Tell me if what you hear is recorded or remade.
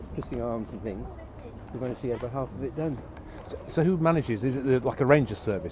recorded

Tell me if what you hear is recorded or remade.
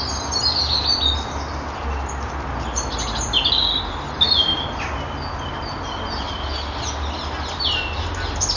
recorded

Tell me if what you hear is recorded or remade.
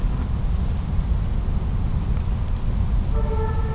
recorded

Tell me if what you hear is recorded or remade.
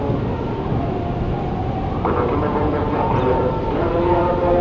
recorded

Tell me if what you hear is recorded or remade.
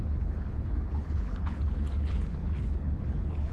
remade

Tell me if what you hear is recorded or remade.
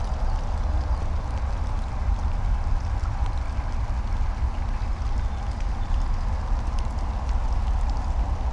recorded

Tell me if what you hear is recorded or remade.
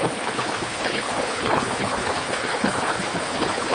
remade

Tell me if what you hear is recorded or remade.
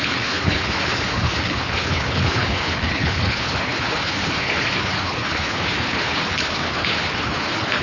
remade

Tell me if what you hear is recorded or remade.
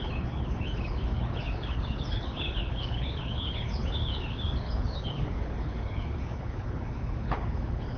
remade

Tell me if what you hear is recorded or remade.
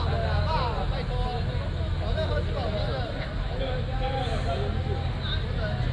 recorded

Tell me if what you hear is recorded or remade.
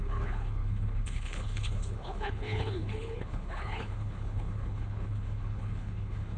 remade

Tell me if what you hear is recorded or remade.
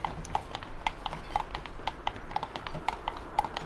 recorded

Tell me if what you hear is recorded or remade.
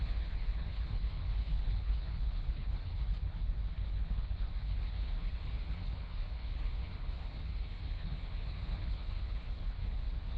remade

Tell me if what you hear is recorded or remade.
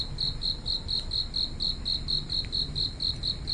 recorded